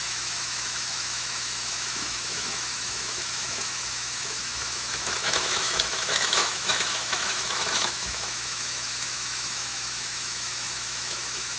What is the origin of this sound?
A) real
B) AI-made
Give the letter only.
B